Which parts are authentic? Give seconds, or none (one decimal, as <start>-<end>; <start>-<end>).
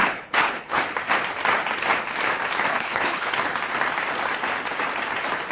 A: 0.8-2.7; 3.3-5.5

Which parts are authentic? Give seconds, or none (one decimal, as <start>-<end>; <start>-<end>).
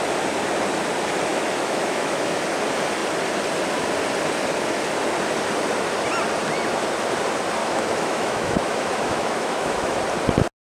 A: 0.0-1.3; 2.4-7.6; 10.0-10.8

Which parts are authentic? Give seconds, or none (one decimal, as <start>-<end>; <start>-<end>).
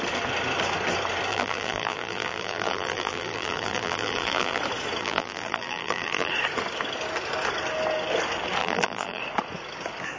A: 0.0-1.3; 4.6-5.0; 6.3-8.6; 9.2-10.2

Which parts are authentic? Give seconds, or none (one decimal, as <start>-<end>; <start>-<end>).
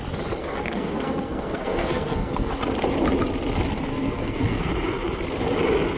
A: 0.0-0.4; 2.5-3.9; 4.7-6.0